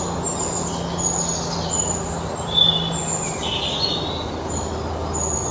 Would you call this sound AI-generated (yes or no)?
no